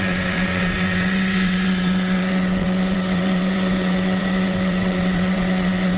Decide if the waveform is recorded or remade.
remade